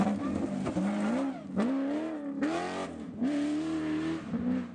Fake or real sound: real